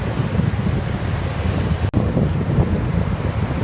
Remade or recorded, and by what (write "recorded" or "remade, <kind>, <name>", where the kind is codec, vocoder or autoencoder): recorded